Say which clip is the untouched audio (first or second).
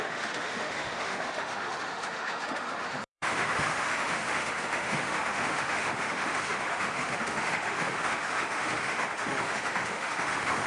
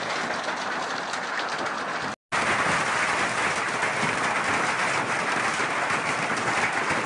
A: second